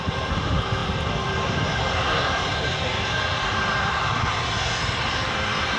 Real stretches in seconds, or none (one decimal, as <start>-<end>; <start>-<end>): 0.0-0.8; 4.3-5.8